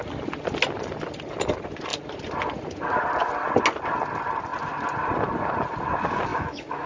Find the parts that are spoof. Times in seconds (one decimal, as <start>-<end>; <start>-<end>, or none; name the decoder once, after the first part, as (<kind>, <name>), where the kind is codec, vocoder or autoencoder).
6.3-6.9 (autoencoder, DAC-VAE)